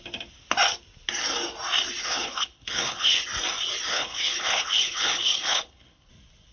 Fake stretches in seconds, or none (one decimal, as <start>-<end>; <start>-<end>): 2.0-3.2; 3.9-6.1